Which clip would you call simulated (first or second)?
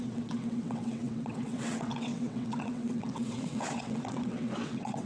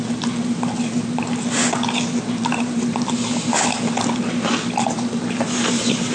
first